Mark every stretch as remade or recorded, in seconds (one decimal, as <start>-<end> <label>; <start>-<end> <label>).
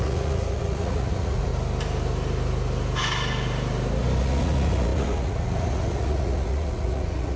0.0-1.5 remade; 1.5-4.2 recorded; 4.2-7.4 remade